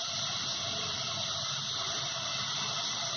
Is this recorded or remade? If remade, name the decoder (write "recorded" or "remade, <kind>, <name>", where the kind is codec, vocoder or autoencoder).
recorded